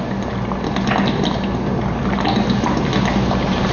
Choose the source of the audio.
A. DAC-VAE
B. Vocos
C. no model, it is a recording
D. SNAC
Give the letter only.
C